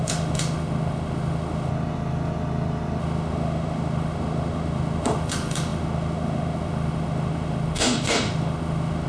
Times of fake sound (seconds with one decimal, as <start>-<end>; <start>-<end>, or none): 0.0-1.7; 3.0-9.1